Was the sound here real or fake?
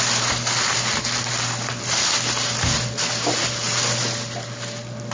fake